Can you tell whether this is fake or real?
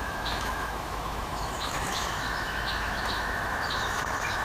fake